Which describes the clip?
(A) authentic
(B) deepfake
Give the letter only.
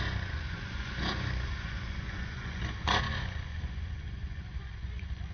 B